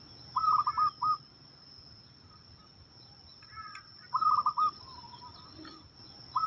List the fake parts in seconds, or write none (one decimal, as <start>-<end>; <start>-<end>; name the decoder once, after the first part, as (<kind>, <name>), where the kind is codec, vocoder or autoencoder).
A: none